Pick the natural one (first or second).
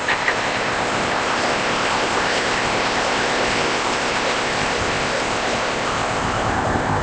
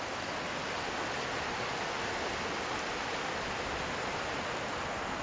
second